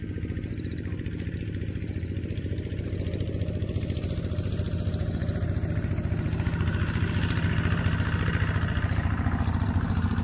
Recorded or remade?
recorded